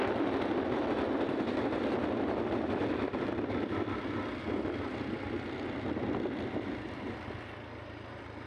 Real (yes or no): no